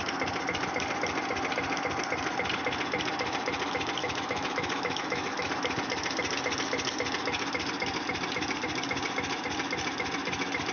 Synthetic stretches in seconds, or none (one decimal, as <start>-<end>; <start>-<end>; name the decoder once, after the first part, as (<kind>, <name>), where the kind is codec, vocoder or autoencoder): 4.0-5.5 (autoencoder, DAC-VAE)